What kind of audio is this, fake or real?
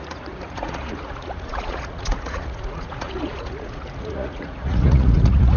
fake